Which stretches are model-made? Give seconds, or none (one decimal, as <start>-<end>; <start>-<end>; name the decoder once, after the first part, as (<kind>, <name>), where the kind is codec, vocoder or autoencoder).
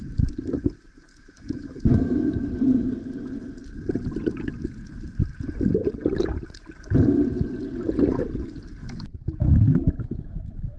1.1-2.5 (autoencoder, DAC-VAE); 8.8-10.8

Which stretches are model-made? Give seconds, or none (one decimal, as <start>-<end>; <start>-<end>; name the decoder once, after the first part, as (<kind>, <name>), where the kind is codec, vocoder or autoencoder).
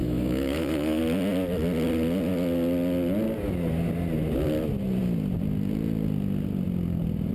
0.0-1.0 (autoencoder, DAC-VAE)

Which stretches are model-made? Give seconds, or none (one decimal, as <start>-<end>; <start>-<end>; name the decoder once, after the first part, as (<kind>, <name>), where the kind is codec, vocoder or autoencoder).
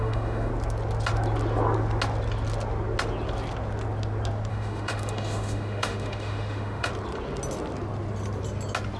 0.0-0.5 (autoencoder, DAC-VAE); 4.5-6.9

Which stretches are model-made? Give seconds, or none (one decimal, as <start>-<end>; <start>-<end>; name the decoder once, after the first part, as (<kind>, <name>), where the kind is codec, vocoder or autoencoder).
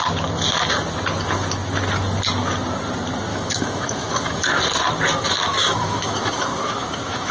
3.3-4.6 (autoencoder, DAC-VAE); 5.5-7.3